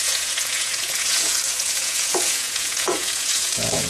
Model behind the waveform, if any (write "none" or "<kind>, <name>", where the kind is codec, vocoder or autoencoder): vocoder, Vocos